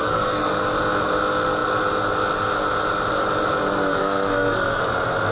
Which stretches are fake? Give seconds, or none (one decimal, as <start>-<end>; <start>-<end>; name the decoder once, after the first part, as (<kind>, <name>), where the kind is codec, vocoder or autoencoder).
0.0-0.5 (codec, SNAC); 3.9-4.8